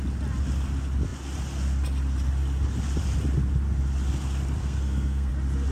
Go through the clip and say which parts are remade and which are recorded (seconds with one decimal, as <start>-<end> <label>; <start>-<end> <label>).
0.0-4.6 recorded; 4.6-5.3 remade; 5.3-5.7 recorded

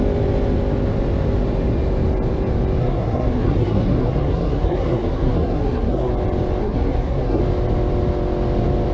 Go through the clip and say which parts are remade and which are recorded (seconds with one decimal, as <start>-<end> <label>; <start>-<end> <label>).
0.0-2.8 recorded; 2.8-6.1 remade; 6.1-6.6 recorded; 6.6-7.4 remade; 7.4-8.9 recorded

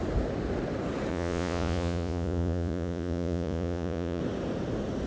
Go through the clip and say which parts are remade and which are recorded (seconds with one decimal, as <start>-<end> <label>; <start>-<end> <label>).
0.0-1.1 recorded; 1.1-4.2 remade; 4.2-5.1 recorded

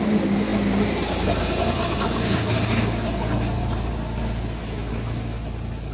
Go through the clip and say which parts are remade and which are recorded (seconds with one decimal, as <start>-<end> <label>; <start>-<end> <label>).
0.0-5.9 recorded

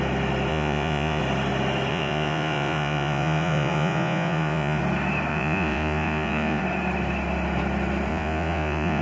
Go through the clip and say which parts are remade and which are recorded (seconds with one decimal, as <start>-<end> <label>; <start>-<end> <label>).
0.0-0.5 recorded; 0.5-1.2 remade; 1.2-1.9 recorded; 1.9-4.8 remade; 4.8-5.3 recorded; 5.3-6.6 remade; 6.6-8.1 recorded; 8.1-9.0 remade